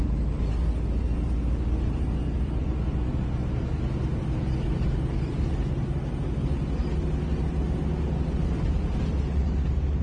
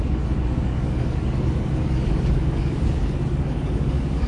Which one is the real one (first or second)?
first